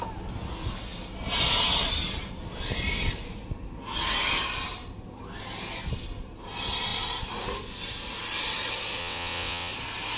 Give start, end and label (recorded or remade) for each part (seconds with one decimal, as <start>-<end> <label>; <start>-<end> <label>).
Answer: 0.0-9.0 recorded; 9.0-9.7 remade; 9.7-10.2 recorded